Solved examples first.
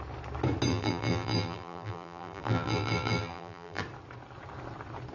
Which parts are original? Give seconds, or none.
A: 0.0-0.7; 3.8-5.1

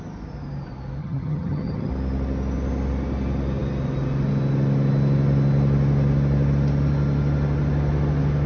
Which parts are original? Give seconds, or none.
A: 0.0-1.0; 1.9-8.5

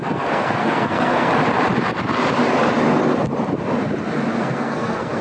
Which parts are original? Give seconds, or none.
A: 1.3-4.4